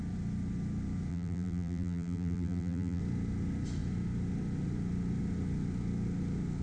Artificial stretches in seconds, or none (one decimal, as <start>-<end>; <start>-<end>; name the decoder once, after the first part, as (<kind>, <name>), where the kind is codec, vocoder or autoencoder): 1.1-3.0 (vocoder, BigVGAN v2)